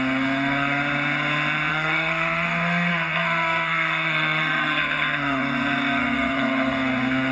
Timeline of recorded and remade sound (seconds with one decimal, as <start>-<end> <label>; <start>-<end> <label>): 0.0-0.8 remade; 0.8-1.7 recorded; 1.7-7.3 remade

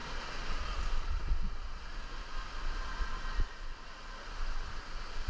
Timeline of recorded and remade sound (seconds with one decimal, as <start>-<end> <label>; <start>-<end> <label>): 0.0-2.0 remade; 2.0-5.3 recorded

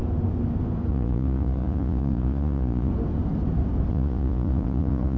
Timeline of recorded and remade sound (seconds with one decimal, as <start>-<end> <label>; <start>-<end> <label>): 0.0-0.9 recorded; 0.9-2.9 remade; 2.9-3.9 recorded; 3.9-5.2 remade

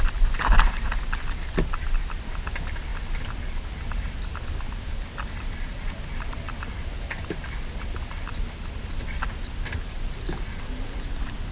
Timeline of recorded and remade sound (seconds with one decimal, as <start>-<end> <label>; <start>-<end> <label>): 0.0-11.5 recorded

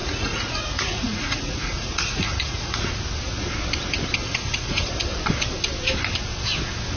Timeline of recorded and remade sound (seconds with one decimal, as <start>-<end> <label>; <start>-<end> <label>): 0.0-2.9 remade; 2.9-4.2 recorded; 4.2-4.9 remade; 4.9-7.0 recorded